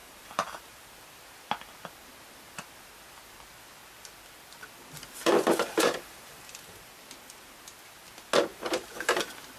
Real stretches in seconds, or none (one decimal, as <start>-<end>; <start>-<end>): 0.9-5.2; 6.9-8.5; 9.2-9.6